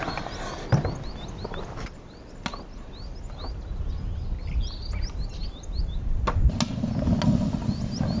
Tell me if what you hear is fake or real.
real